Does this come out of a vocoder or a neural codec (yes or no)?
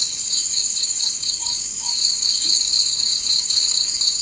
yes